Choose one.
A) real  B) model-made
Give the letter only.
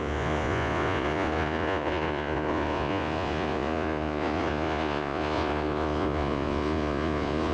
B